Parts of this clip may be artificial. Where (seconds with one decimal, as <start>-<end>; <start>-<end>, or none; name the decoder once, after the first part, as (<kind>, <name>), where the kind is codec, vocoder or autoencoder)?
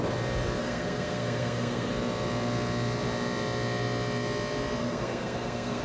0.6-1.9 (codec, SNAC); 4.8-5.8